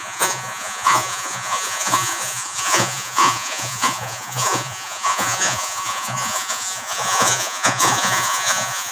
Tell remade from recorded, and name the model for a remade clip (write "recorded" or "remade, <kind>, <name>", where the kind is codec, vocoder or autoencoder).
remade, vocoder, Vocos